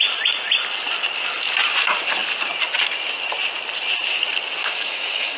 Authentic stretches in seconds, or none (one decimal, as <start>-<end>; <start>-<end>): 0.0-4.6